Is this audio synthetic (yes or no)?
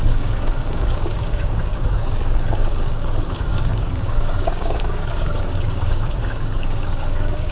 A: yes